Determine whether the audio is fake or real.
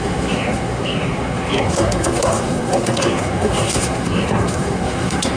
fake